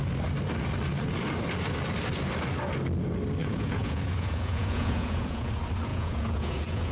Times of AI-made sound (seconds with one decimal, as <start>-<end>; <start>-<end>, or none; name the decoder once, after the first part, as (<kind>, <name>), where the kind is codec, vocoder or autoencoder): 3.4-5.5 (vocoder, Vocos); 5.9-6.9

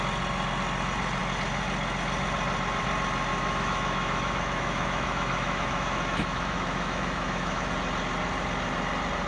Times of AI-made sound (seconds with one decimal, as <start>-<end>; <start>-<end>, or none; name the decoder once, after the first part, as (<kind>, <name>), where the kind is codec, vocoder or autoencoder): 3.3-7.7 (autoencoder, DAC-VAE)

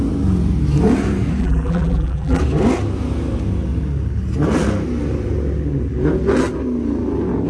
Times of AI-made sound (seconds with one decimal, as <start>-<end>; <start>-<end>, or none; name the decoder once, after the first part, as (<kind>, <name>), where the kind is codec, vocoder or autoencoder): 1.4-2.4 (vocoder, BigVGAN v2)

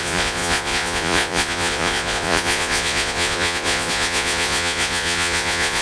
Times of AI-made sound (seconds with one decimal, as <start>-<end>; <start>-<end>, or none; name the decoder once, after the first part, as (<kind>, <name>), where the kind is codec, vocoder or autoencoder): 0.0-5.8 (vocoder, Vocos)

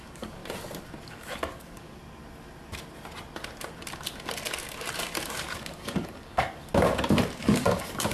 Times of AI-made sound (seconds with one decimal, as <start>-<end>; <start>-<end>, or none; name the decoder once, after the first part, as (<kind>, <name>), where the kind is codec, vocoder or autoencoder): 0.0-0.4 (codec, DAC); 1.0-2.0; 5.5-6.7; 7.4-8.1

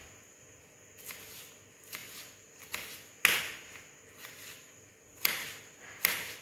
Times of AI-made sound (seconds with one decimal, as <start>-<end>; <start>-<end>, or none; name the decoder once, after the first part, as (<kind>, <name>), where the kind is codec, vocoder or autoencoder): none